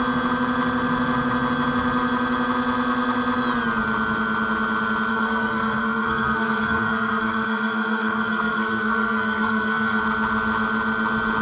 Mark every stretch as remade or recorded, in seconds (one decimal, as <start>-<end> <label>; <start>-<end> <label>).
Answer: 0.0-5.1 recorded; 5.1-10.0 remade; 10.0-11.4 recorded